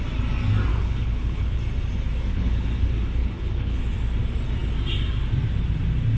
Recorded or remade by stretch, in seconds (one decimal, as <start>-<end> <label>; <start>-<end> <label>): 0.0-0.7 recorded; 0.7-1.6 remade; 1.6-2.3 recorded; 2.3-2.8 remade; 2.8-3.2 recorded; 3.2-3.8 remade; 3.8-6.2 recorded